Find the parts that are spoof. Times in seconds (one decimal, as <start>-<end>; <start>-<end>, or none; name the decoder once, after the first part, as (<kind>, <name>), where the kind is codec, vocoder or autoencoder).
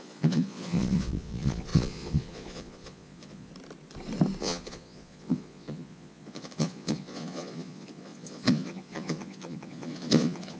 0.0-3.5 (vocoder, Vocos); 4.4-10.6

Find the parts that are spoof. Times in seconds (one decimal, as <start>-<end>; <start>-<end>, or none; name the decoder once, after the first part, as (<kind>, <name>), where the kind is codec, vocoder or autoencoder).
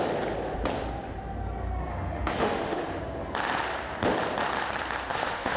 1.9-3.0 (autoencoder, DAC-VAE); 5.1-5.6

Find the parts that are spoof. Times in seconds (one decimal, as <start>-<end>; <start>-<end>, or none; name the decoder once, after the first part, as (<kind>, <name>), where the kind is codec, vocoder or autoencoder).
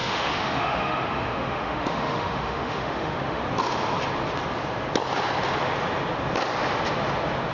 0.0-3.4 (autoencoder, DAC-VAE)